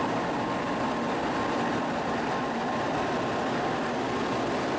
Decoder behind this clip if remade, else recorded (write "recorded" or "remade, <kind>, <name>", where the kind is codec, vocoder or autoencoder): recorded